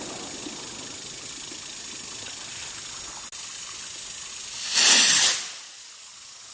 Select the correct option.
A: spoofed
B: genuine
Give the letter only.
B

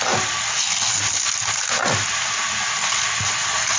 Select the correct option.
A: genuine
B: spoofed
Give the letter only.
A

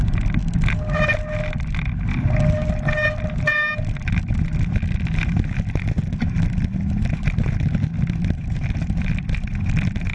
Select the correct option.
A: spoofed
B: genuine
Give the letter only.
B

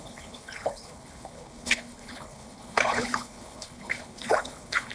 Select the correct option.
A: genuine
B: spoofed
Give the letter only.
B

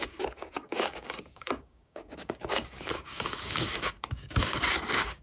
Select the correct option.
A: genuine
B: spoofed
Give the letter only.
B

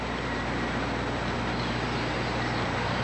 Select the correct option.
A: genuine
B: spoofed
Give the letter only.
A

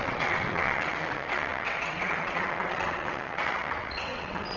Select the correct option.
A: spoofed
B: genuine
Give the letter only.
A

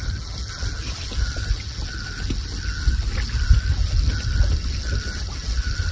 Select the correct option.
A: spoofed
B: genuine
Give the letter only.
B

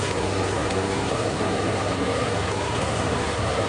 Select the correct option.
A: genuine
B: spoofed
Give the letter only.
B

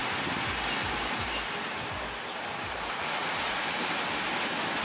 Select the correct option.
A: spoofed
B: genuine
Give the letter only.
B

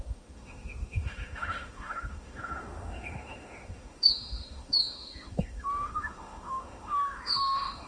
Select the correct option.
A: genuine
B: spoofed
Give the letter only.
B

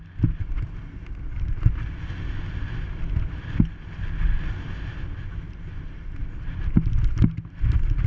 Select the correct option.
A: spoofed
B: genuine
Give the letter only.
B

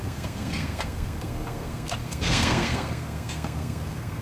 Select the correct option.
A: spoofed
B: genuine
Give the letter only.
A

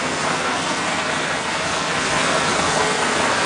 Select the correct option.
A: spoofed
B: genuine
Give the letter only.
A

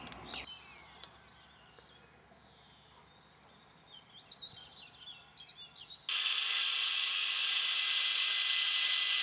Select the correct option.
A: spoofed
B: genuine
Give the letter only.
B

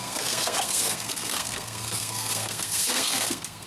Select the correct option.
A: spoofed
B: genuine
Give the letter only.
A